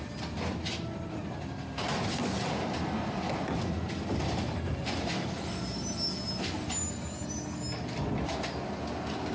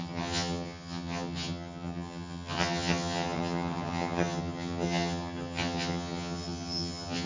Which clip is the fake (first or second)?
second